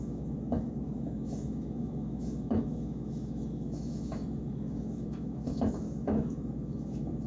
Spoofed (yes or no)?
yes